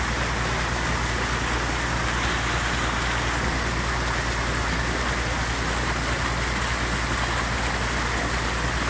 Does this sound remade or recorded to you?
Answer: recorded